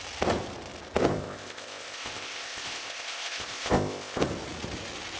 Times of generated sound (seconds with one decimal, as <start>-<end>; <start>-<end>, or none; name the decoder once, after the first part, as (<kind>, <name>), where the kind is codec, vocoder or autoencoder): 1.1-4.2 (codec, ZipCodec)